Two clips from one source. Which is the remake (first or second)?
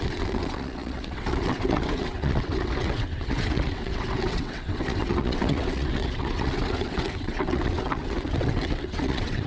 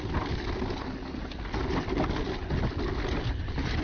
first